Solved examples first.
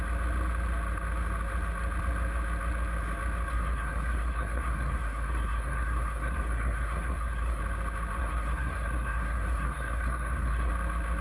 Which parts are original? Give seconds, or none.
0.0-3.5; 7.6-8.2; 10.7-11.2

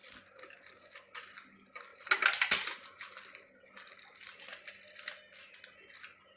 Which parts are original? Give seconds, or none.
0.0-6.4

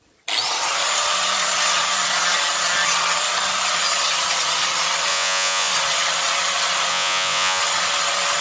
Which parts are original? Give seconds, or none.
0.0-5.1; 5.7-6.9; 7.6-8.4

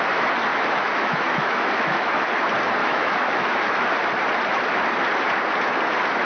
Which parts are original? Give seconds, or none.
0.0-0.5; 2.3-2.8; 3.9-6.2